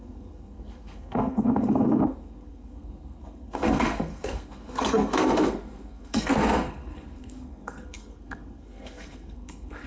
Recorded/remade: remade